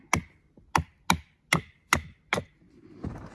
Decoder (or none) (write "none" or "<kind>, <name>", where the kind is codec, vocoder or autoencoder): none